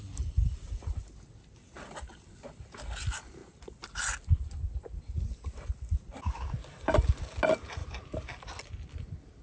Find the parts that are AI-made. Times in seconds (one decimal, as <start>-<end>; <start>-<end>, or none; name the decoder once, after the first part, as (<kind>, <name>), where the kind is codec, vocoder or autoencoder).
none

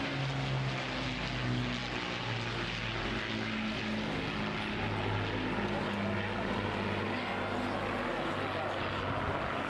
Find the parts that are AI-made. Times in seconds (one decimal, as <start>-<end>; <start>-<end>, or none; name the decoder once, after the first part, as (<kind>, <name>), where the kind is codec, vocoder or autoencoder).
none